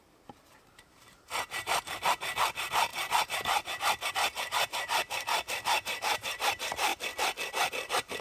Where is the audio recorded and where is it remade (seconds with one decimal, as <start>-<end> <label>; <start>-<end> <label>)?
0.0-6.9 remade; 6.9-7.7 recorded; 7.7-8.2 remade